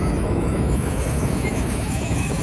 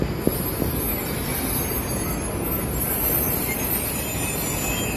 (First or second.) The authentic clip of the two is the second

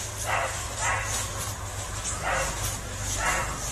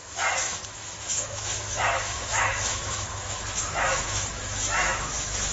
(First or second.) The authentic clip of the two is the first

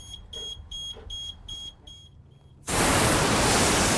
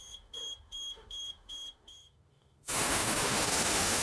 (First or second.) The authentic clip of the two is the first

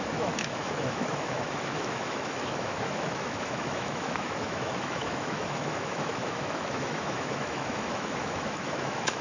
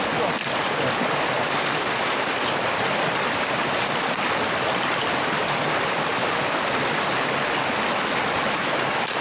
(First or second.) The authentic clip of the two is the second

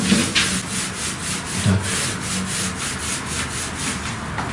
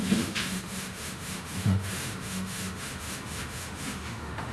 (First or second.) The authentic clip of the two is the first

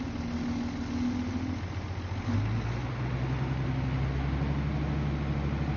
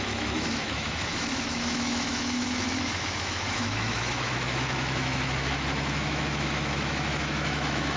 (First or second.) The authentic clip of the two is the first